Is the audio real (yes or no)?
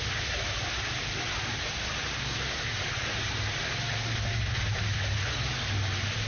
yes